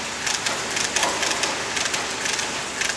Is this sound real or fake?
real